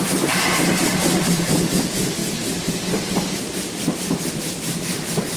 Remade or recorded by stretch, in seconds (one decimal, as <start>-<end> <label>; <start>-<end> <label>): 0.0-2.2 remade; 2.2-5.4 recorded